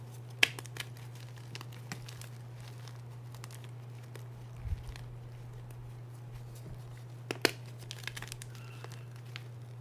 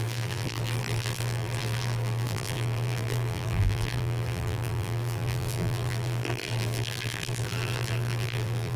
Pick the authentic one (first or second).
first